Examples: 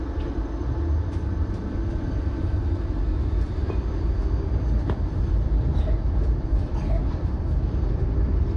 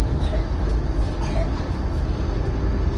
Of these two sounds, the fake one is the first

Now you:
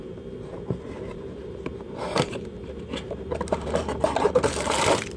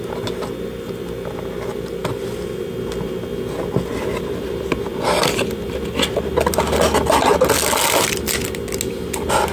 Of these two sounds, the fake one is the first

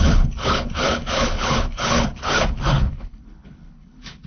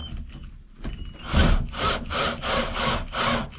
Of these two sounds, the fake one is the first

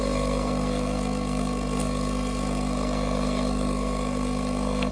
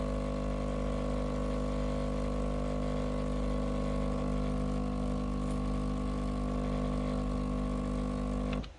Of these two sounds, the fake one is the first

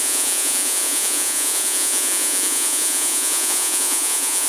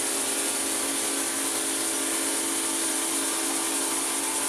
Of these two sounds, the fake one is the first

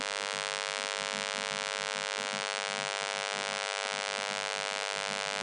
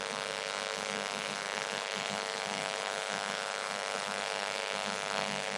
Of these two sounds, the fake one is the second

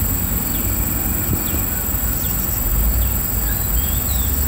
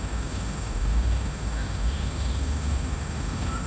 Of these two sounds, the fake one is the second